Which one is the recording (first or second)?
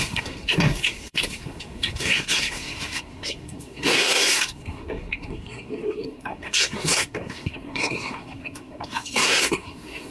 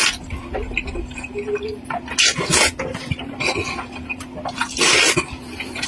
second